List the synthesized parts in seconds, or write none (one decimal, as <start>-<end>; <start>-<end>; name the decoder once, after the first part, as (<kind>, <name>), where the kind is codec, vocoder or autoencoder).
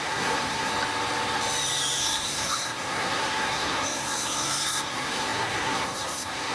0.0-0.7 (codec, SNAC); 2.0-6.5